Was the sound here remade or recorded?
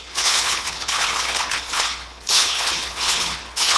remade